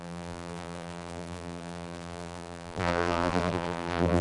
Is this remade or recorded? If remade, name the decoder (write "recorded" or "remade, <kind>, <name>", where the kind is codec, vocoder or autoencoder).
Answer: remade, vocoder, BigVGAN v2